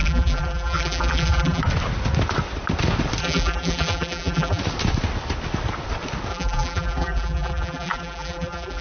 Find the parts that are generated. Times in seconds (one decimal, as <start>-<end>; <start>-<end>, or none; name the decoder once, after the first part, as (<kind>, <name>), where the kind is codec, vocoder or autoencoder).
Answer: 0.0-1.6 (vocoder, BigVGAN v2); 3.2-4.6; 6.3-8.8